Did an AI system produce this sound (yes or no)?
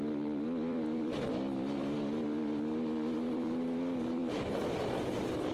yes